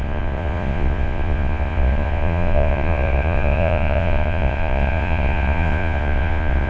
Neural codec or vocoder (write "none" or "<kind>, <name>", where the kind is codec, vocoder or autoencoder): vocoder, Vocos